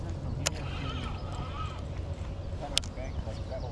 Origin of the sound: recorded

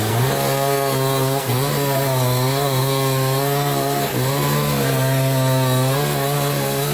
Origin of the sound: remade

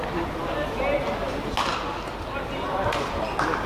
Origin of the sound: recorded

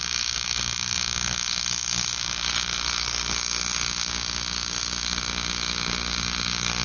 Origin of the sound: remade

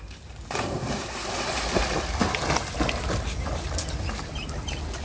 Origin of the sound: recorded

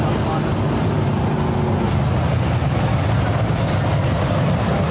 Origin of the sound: recorded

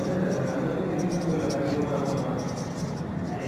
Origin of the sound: recorded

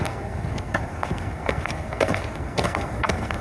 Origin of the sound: remade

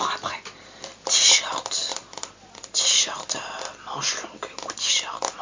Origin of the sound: recorded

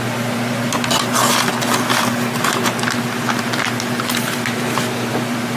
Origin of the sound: recorded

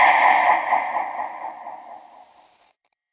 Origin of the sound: remade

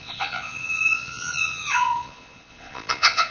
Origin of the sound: remade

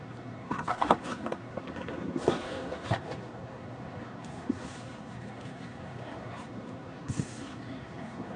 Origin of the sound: remade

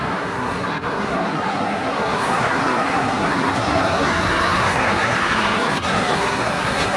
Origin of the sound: remade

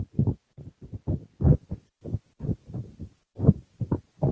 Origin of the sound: recorded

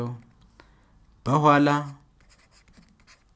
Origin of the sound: recorded